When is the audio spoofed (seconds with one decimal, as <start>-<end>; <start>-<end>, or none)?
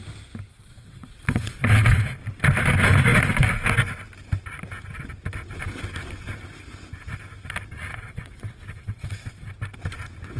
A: 0.5-2.0; 7.9-9.5